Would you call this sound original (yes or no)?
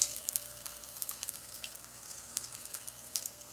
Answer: no